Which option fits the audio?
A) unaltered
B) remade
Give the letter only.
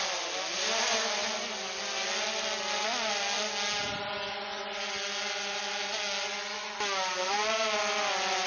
A